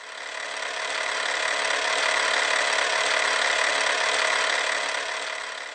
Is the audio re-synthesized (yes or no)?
no